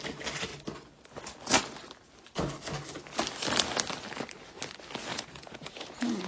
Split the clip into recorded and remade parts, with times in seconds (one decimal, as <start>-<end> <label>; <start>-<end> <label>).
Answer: 0.0-5.1 recorded; 5.1-6.3 remade